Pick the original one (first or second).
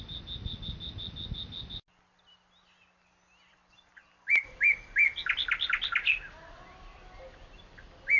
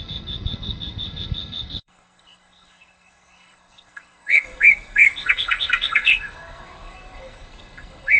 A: first